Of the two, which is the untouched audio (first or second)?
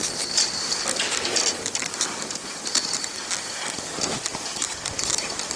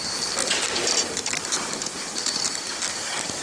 first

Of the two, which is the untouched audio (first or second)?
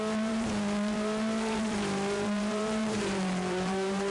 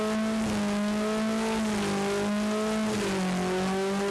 second